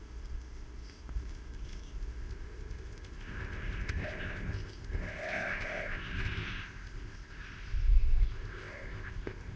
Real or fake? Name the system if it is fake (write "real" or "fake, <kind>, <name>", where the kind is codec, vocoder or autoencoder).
fake, codec, ZipCodec